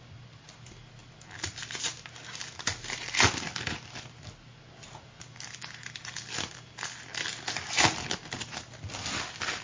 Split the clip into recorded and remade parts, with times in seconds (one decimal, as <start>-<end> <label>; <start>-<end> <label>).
0.0-9.6 recorded